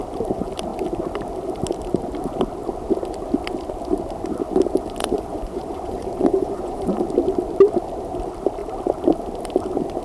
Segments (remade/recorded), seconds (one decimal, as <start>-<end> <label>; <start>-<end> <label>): 0.0-5.0 recorded; 5.0-7.0 remade; 7.0-10.0 recorded